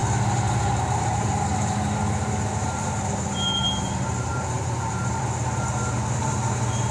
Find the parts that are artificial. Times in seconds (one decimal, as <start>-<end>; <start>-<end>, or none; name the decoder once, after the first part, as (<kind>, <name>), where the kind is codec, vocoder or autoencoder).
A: 0.8-6.9 (vocoder, BigVGAN v2)